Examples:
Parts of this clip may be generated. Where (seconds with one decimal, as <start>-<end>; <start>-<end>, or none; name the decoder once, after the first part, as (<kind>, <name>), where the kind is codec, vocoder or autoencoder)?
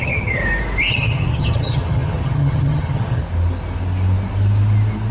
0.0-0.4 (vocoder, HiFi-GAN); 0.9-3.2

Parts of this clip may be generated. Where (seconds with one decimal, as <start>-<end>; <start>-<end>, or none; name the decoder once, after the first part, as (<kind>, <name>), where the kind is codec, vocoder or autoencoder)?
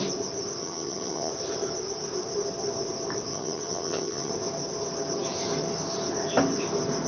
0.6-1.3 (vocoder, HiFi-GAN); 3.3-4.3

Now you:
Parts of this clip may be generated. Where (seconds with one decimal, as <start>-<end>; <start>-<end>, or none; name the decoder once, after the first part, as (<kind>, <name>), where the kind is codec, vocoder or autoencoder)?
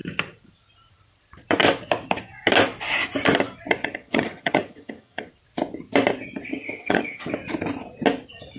3.8-5.3 (vocoder, HiFi-GAN); 6.5-7.3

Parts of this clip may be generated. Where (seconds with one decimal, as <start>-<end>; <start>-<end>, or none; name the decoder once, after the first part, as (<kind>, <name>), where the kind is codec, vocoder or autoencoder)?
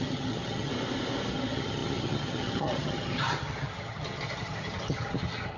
0.0-0.7 (vocoder, HiFi-GAN); 1.3-5.6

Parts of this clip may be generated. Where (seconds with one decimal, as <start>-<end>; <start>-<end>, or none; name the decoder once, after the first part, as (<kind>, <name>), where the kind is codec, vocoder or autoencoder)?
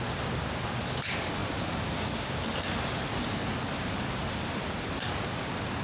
none